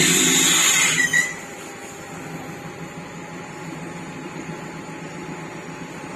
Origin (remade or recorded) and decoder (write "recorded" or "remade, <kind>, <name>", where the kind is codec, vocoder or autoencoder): recorded